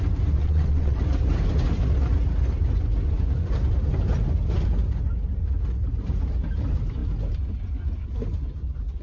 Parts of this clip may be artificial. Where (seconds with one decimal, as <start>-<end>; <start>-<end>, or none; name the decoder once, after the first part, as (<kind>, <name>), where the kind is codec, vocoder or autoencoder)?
0.4-1.0 (vocoder, WaveNeXt)